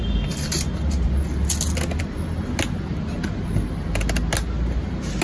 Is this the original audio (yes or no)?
yes